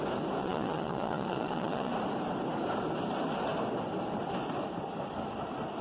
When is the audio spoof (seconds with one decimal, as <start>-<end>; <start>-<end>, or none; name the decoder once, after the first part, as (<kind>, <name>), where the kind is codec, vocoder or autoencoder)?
0.4-1.9 (vocoder, Vocos)

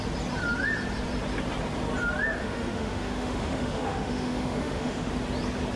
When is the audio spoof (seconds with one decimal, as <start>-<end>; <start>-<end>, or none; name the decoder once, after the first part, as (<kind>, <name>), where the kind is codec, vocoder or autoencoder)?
2.4-5.1 (autoencoder, DAC-VAE)

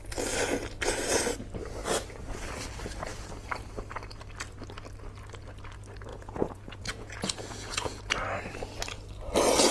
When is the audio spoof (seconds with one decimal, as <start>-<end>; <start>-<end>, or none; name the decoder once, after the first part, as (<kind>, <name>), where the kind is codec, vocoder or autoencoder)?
6.1-8.0 (vocoder, Vocos)

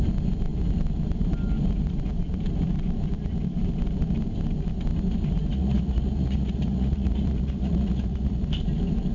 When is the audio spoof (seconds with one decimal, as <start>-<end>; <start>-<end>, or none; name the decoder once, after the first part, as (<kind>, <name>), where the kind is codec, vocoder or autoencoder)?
5.5-8.4 (vocoder, Vocos)